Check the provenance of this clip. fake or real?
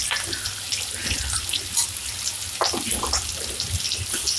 real